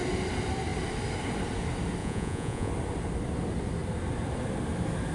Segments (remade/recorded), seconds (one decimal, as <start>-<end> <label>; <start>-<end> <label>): 0.0-2.0 recorded; 2.0-2.7 remade; 2.7-5.1 recorded